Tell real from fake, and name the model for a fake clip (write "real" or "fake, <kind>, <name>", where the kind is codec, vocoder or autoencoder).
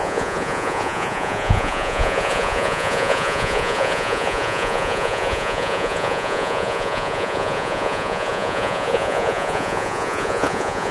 fake, vocoder, Vocos